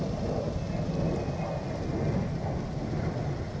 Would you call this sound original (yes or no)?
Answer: yes